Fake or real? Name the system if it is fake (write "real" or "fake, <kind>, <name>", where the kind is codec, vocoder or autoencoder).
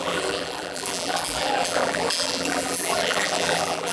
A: fake, vocoder, BigVGAN v2